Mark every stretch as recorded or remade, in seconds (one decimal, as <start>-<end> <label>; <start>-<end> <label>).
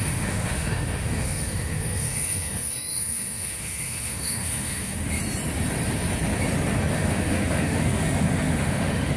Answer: 0.0-5.2 remade; 5.2-6.9 recorded; 6.9-9.2 remade